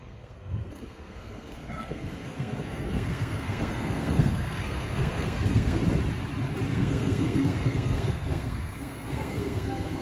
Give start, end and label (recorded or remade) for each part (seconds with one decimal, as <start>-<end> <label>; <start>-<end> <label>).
0.0-5.8 remade; 5.8-6.7 recorded; 6.7-10.0 remade